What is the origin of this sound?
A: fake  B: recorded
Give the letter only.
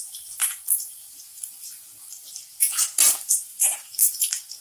A